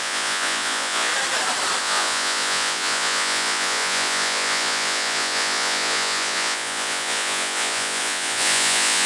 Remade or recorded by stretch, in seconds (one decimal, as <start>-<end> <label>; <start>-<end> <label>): 0.0-1.1 remade; 1.1-1.8 recorded; 1.8-9.1 remade